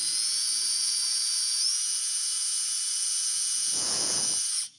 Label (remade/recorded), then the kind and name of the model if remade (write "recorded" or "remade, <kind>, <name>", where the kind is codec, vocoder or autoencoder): remade, vocoder, Vocos